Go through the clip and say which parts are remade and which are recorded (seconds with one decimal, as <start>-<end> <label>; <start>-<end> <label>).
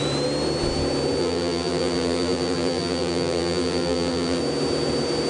0.0-1.2 recorded; 1.2-4.4 remade; 4.4-5.3 recorded